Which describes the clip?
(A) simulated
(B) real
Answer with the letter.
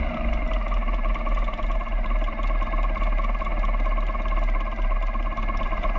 B